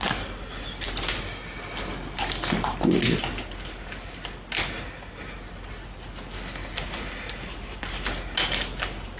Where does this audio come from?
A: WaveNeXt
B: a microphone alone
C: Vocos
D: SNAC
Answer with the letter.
B